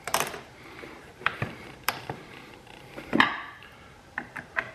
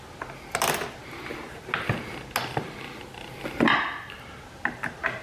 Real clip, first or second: second